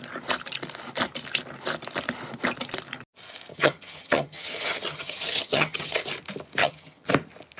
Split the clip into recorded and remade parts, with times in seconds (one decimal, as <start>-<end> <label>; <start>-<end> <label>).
0.0-3.5 recorded; 3.5-6.0 remade; 6.0-6.6 recorded; 6.6-7.1 remade; 7.1-7.6 recorded